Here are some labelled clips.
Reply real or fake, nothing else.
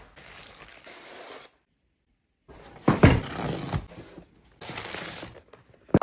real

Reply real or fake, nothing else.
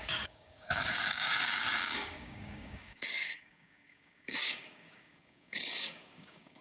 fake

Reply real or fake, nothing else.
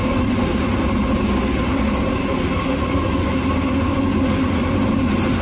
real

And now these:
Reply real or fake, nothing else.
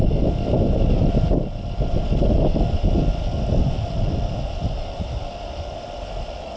real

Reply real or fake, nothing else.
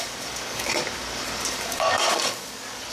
fake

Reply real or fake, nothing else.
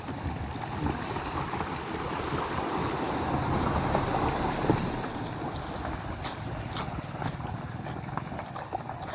real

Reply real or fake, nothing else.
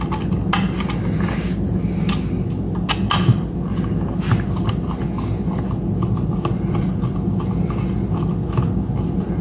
real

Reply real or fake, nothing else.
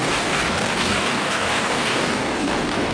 fake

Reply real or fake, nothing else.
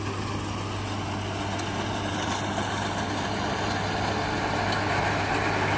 real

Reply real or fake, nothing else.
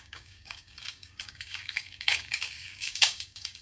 fake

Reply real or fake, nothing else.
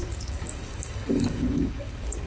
fake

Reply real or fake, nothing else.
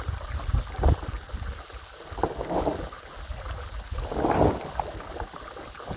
real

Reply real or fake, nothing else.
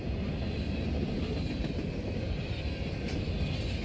real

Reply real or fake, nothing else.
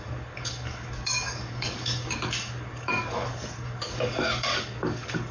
fake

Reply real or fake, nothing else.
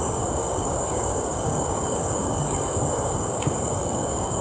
fake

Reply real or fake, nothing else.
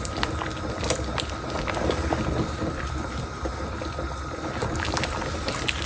real